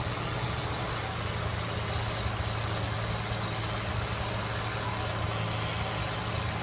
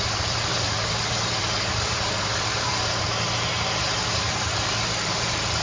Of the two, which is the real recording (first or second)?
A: first